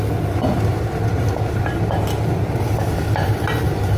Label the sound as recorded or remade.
recorded